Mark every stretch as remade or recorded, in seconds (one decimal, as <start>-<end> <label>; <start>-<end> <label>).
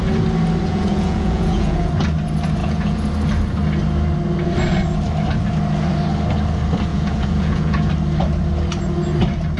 0.0-0.7 recorded; 0.7-1.9 remade; 1.9-2.6 recorded; 2.6-3.1 remade; 3.1-6.9 recorded; 6.9-7.9 remade; 7.9-9.6 recorded